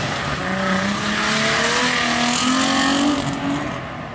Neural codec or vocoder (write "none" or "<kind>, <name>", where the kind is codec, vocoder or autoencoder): none